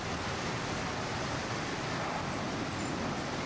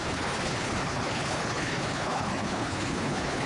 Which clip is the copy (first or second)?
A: second